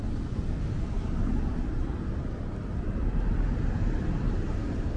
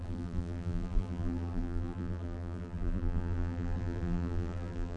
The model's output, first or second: second